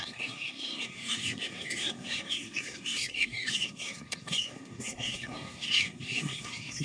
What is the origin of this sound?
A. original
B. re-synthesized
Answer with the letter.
B